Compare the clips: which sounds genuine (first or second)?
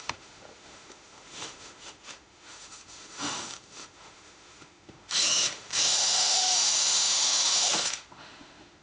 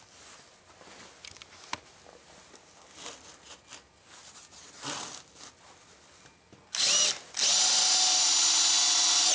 second